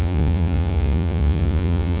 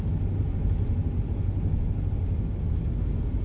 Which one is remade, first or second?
first